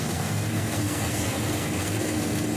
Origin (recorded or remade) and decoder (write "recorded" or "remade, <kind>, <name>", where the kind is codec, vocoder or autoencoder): remade, codec, SNAC